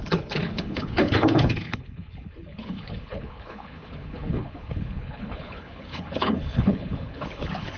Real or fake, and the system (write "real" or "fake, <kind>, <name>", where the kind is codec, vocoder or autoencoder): fake, codec, HILCodec